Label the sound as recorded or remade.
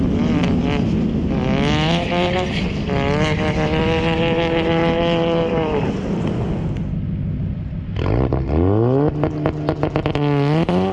recorded